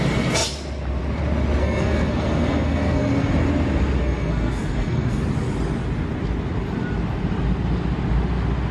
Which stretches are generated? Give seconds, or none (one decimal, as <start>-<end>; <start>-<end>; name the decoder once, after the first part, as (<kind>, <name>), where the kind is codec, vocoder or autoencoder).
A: 1.6-3.3 (codec, SNAC); 4.0-5.2